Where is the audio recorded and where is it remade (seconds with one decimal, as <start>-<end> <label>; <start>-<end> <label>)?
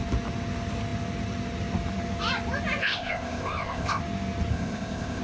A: 0.0-2.8 recorded; 2.8-4.0 remade; 4.0-4.5 recorded; 4.5-5.2 remade